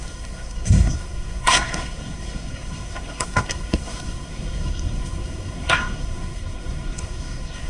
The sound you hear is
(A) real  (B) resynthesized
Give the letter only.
B